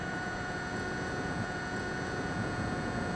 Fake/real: fake